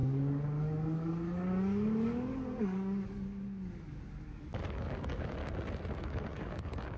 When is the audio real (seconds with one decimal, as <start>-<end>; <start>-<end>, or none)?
5.4-6.0